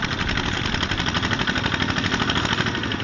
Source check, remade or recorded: recorded